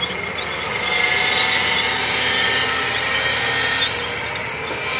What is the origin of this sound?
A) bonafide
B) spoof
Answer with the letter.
A